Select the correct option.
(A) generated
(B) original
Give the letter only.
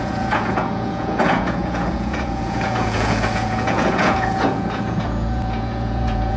A